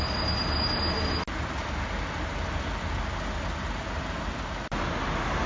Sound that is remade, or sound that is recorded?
recorded